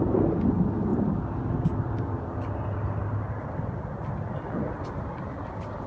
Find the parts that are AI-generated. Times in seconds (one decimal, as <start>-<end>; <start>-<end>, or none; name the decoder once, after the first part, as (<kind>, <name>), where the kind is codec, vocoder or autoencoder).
none